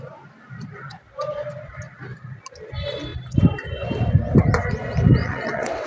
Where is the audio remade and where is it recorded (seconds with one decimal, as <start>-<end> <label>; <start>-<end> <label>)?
0.0-5.2 recorded; 5.2-5.9 remade